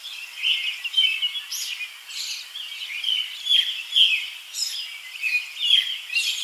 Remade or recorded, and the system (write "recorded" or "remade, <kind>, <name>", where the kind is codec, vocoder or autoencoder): recorded